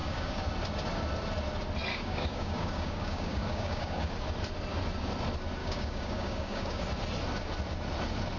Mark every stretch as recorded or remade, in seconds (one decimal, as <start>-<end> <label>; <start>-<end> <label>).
0.0-0.5 remade; 0.5-1.9 recorded; 1.9-4.1 remade; 4.1-5.6 recorded; 5.6-6.8 remade; 6.8-8.4 recorded